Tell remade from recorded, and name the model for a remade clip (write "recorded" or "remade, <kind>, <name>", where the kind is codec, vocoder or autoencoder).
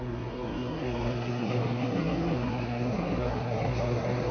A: remade, codec, SNAC